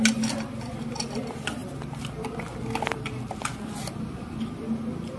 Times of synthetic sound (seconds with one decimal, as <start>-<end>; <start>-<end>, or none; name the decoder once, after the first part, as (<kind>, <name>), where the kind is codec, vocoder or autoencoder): none